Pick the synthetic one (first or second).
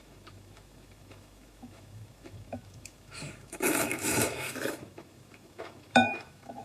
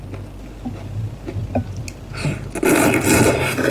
first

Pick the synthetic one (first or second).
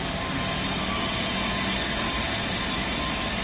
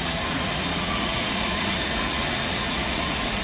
second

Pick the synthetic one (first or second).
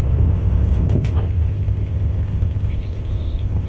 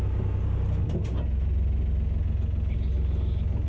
first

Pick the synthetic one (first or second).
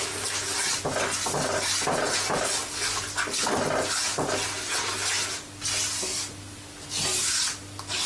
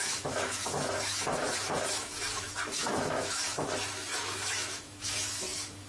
second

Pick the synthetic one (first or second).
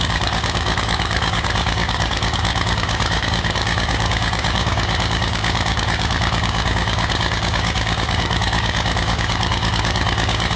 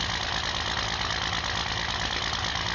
first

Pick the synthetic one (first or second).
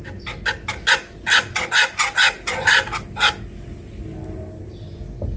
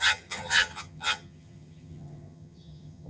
second